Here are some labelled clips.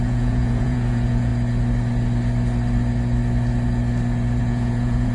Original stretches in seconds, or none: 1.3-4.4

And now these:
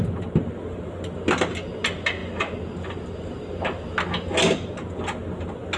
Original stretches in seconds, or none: 0.0-5.8